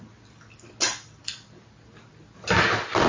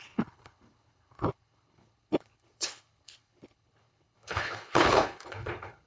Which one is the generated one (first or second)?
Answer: second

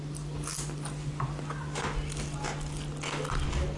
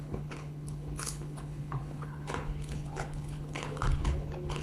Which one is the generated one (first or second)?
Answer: second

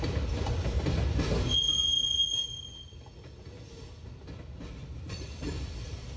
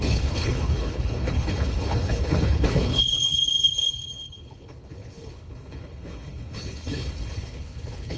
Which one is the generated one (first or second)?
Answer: second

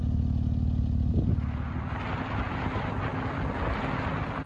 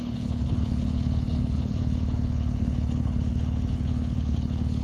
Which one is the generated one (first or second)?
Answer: second